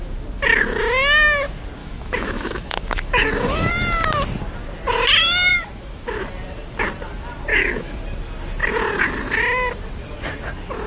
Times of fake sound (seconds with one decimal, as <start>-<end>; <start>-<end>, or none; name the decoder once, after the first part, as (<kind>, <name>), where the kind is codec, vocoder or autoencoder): 1.8-3.7 (autoencoder, DAC-VAE); 5.5-6.2; 7.5-8.0